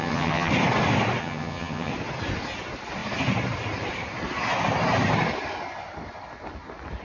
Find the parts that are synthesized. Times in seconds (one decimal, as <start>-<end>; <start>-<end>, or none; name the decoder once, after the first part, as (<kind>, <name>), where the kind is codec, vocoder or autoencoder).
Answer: 0.0-0.5 (vocoder, HiFi-GAN); 1.2-1.9